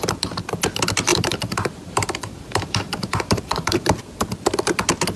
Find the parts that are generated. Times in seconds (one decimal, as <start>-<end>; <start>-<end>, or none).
1.1-4.2